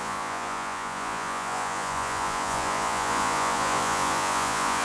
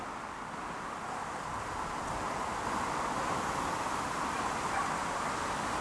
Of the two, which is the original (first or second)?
second